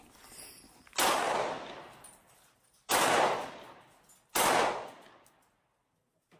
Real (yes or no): yes